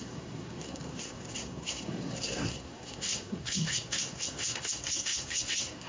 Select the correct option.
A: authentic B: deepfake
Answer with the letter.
B